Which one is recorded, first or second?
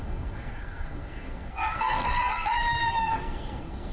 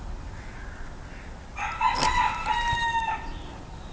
second